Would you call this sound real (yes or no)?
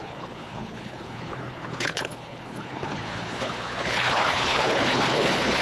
no